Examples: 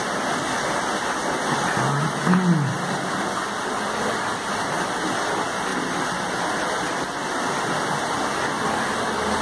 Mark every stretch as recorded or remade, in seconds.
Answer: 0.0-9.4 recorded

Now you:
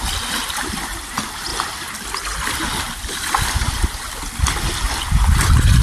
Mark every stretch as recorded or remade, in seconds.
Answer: 0.0-1.5 remade; 1.5-2.5 recorded; 2.5-5.8 remade

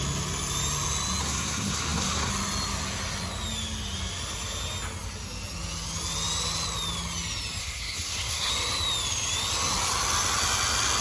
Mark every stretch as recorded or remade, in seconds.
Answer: 0.0-1.2 recorded; 1.2-2.3 remade; 2.3-7.6 recorded; 7.6-8.5 remade; 8.5-11.0 recorded